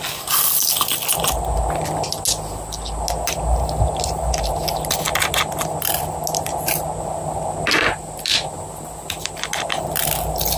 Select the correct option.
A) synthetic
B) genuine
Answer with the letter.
B